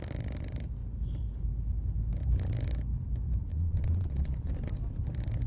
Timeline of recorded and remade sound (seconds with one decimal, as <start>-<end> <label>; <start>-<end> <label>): 0.0-3.5 recorded; 3.5-4.5 remade; 4.5-5.5 recorded